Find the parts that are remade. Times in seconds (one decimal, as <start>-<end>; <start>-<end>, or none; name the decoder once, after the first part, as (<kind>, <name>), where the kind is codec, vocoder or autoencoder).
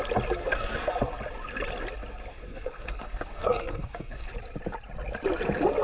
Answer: 0.4-1.0 (codec, SNAC); 2.3-4.3